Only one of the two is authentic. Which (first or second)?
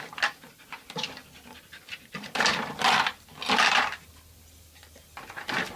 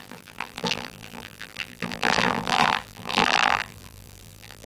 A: first